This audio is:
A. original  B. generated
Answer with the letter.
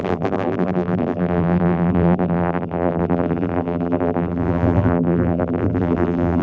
B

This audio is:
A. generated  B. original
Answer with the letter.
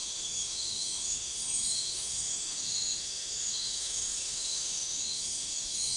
A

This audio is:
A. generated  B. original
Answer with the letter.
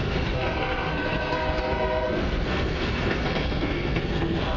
A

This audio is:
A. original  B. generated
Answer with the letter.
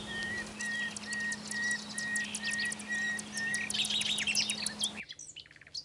A